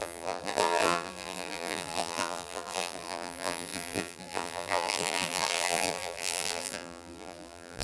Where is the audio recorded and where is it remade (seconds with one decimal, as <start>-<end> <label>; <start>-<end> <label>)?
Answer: 0.0-7.8 remade